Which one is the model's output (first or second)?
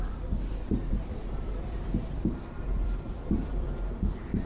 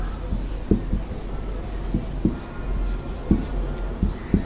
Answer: first